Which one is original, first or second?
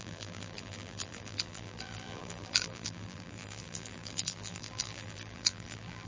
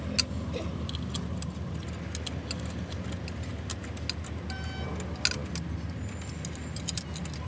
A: second